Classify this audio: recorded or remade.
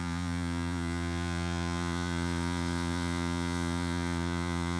remade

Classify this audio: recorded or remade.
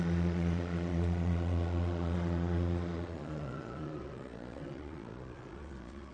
remade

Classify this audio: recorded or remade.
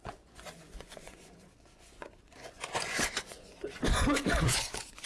remade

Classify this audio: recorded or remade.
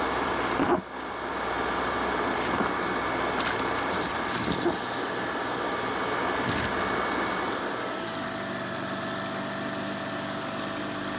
recorded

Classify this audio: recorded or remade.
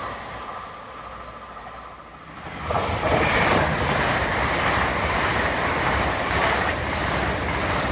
recorded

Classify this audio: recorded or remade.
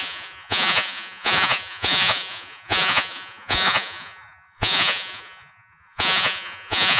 remade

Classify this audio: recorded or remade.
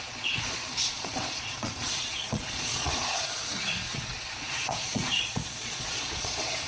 remade